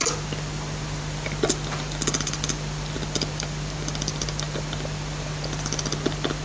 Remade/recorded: remade